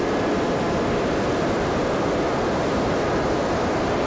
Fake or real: real